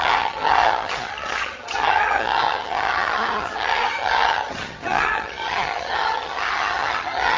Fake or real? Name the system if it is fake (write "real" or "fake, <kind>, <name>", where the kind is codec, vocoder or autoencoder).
fake, vocoder, HiFi-GAN